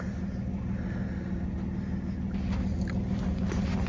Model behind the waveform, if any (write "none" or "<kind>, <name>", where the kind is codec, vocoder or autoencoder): none